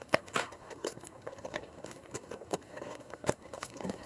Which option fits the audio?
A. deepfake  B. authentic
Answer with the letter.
A